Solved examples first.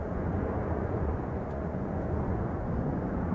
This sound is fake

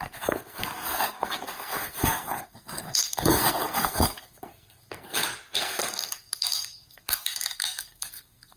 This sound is fake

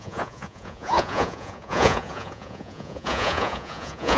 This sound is fake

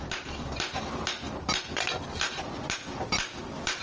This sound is real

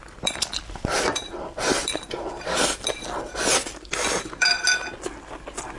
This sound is real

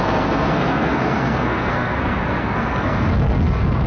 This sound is fake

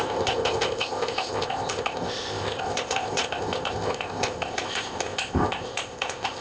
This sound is fake